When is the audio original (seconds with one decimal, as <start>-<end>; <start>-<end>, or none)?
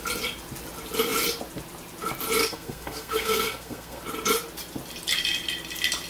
0.0-2.4; 4.0-6.1